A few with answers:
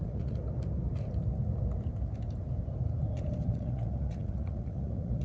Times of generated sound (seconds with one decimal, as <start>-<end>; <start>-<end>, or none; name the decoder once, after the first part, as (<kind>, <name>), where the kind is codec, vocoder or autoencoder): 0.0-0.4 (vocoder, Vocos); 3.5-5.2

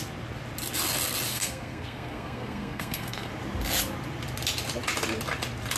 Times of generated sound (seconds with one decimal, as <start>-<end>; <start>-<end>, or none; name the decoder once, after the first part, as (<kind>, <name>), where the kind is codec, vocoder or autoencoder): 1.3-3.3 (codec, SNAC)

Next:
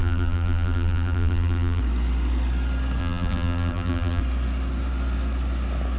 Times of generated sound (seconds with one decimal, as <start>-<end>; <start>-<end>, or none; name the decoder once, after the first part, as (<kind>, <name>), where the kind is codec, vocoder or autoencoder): 0.0-1.8 (vocoder, BigVGAN v2); 3.0-4.2

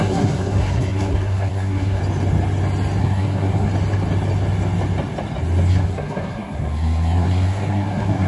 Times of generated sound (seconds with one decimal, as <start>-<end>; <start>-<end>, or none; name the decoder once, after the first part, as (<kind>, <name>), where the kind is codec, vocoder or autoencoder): 0.0-2.0 (codec, SNAC); 3.0-3.7; 5.7-8.3

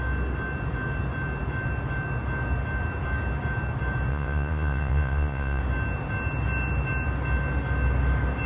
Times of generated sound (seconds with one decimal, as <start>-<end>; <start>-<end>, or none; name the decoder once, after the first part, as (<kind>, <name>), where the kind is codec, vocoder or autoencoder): 4.1-5.6 (vocoder, Vocos)